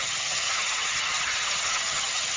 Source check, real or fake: fake